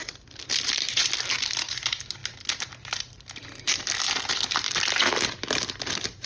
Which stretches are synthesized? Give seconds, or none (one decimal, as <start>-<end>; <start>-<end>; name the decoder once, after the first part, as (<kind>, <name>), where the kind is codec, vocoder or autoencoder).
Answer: none